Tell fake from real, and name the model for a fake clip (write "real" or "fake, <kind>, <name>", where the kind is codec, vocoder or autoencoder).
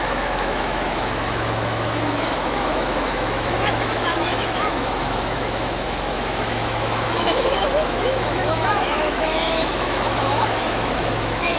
fake, autoencoder, DAC-VAE